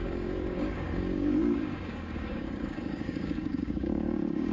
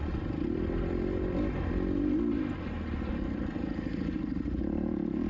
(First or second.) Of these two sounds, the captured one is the second